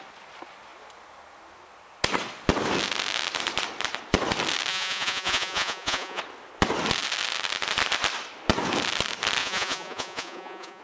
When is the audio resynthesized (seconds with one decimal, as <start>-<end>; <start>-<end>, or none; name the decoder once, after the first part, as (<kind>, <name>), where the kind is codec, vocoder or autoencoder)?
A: 4.7-6.2 (vocoder, Vocos); 9.4-10.8